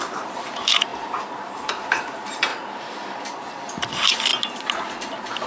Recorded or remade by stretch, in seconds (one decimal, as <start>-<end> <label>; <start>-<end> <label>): 0.0-2.5 remade; 2.5-3.4 recorded; 3.4-4.3 remade; 4.3-5.5 recorded